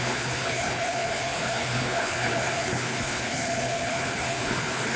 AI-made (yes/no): yes